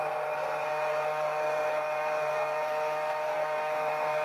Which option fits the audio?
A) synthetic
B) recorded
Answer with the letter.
A